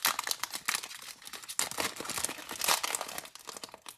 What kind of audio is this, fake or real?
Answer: real